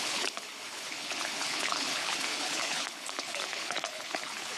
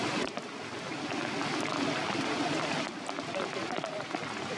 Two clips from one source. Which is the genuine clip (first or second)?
second